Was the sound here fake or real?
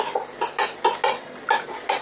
real